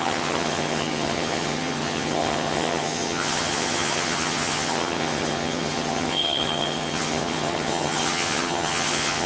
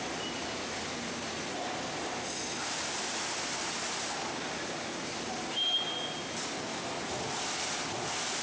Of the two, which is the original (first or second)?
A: second